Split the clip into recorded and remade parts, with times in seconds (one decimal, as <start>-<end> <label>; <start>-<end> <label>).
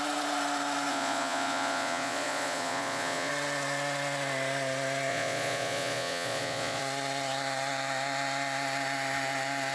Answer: 0.0-0.9 recorded; 0.9-3.3 remade; 3.3-5.1 recorded; 5.1-6.8 remade; 6.8-9.7 recorded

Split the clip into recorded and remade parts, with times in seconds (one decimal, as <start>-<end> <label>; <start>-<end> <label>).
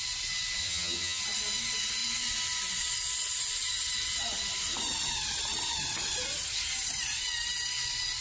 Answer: 0.0-0.6 recorded; 0.6-1.2 remade; 1.2-8.2 recorded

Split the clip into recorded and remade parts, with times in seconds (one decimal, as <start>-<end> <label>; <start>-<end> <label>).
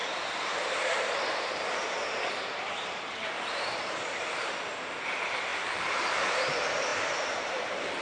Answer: 0.0-2.3 recorded; 2.3-8.0 remade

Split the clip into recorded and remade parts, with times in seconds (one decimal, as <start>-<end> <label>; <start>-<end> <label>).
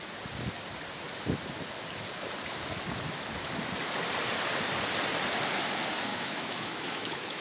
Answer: 0.0-6.1 recorded; 6.1-7.4 remade